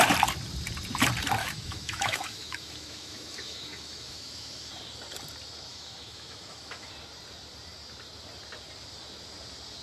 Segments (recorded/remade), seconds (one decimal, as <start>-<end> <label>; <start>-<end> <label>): 0.0-1.4 recorded; 1.4-4.7 remade; 4.7-5.7 recorded; 5.7-6.9 remade; 6.9-9.8 recorded